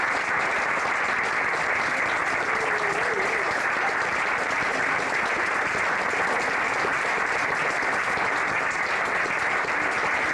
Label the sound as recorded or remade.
recorded